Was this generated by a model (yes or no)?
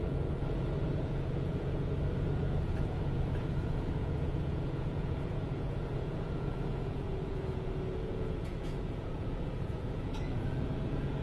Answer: yes